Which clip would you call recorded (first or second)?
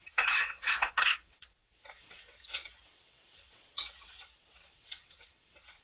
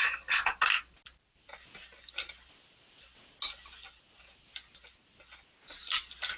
second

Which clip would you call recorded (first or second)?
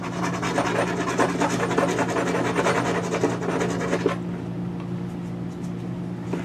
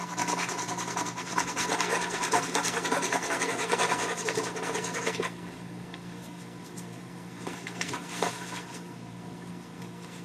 first